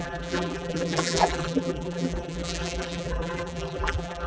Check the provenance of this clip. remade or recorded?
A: remade